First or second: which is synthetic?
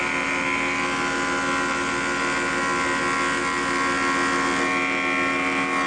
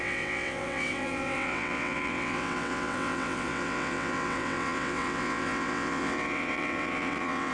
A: second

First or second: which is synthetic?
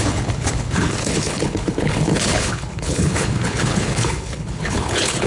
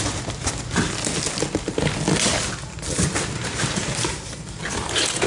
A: first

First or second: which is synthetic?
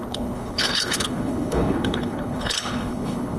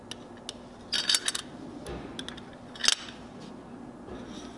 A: first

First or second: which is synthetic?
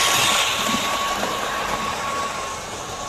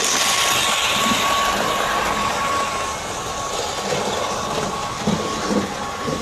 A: first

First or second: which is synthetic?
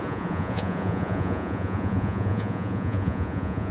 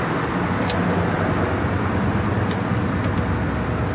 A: first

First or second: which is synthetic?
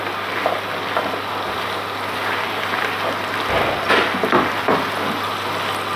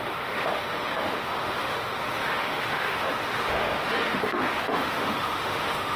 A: second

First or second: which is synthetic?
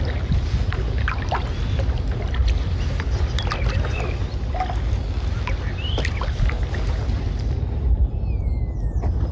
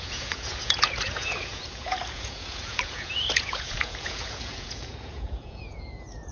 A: second